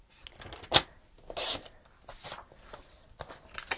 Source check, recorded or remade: recorded